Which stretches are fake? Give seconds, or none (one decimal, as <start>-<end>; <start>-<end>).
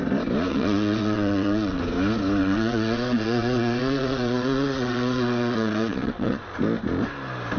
0.5-1.8; 2.4-6.4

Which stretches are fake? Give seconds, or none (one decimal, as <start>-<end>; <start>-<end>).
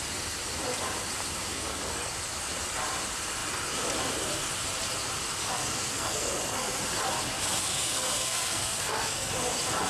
1.5-2.1; 5.4-6.8; 7.6-9.3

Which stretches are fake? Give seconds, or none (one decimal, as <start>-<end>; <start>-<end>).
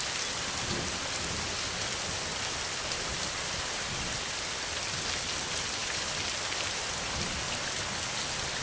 none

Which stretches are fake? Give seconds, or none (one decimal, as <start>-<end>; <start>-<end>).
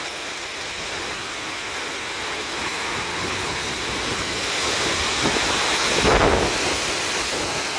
3.1-3.7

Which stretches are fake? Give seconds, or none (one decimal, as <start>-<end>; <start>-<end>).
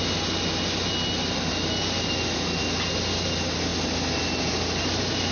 none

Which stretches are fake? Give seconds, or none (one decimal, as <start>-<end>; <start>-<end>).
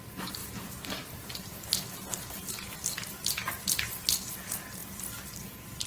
0.4-2.5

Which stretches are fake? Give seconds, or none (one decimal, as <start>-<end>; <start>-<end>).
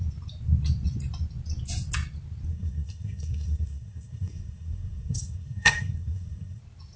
2.5-6.6